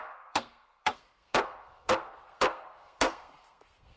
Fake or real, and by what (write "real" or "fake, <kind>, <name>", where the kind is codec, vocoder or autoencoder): fake, codec, SNAC